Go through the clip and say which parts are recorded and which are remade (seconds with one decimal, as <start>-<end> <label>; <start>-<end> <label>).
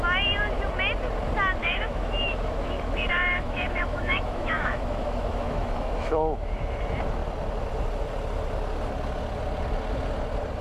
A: 0.0-1.6 recorded; 1.6-6.7 remade; 6.7-10.6 recorded